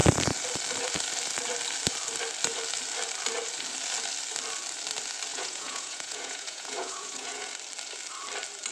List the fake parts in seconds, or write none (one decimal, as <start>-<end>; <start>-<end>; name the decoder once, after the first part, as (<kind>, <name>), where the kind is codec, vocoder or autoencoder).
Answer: 5.3-7.5 (vocoder, Vocos)